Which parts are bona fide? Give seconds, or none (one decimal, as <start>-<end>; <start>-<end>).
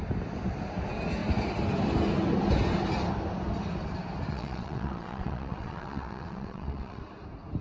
0.0-4.3; 7.0-7.6